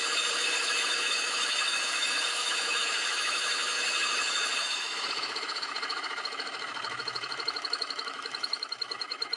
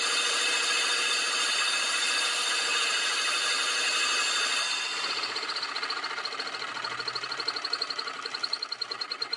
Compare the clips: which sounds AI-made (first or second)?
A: first